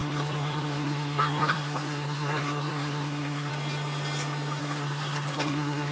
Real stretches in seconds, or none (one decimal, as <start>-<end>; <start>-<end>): 3.5-4.6